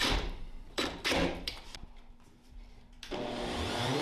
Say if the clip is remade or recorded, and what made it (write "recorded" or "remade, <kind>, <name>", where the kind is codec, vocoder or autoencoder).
remade, vocoder, BigVGAN v2